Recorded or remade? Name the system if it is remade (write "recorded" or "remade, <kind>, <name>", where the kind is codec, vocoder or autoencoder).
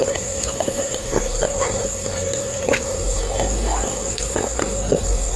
remade, codec, SNAC